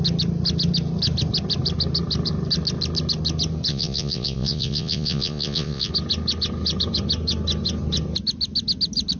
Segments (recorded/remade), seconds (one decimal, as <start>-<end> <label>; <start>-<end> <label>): 0.0-3.7 recorded; 3.7-5.9 remade; 5.9-9.2 recorded